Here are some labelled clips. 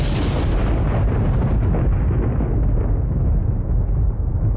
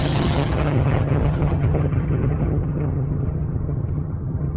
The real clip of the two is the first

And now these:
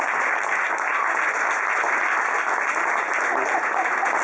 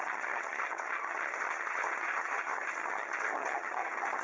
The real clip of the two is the first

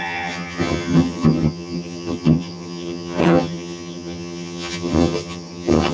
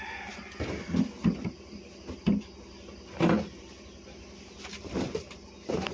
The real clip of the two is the second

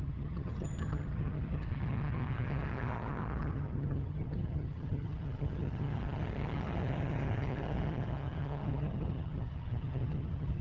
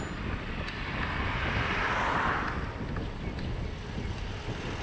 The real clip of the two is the second